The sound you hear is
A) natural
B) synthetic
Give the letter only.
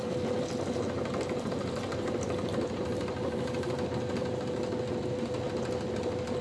A